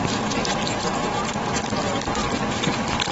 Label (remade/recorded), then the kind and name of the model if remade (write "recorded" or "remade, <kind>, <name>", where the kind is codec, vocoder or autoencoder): recorded